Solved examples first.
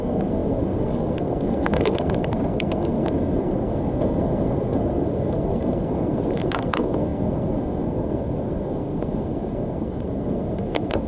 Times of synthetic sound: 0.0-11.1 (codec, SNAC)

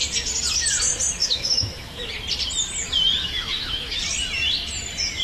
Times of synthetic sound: 1.2-2.1 (autoencoder, DAC-VAE); 3.2-4.0

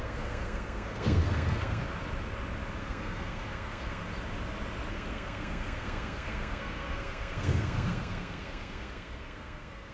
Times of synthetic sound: 0.0-1.8 (codec, SNAC); 2.8-4.0; 4.9-9.9

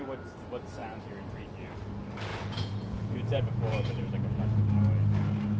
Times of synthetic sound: 2.3-4.6 (vocoder, Vocos)

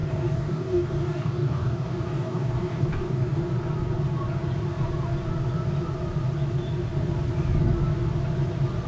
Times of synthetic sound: 0.0-3.4 (codec, DAC)

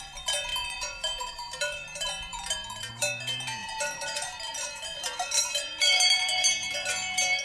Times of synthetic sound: 0.0-7.4 (vocoder, BigVGAN v2)

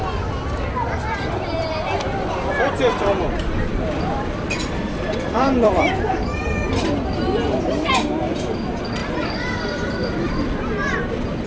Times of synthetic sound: 3.7-6.1 (vocoder, BigVGAN v2); 9.0-10.6

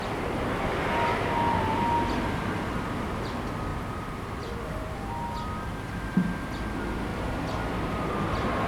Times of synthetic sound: 3.7-5.0 (vocoder, BigVGAN v2); 7.1-8.1